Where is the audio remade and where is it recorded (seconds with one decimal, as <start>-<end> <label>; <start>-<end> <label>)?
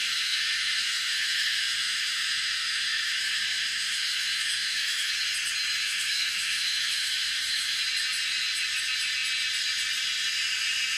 0.0-5.1 remade; 5.1-5.8 recorded; 5.8-7.8 remade; 7.8-11.0 recorded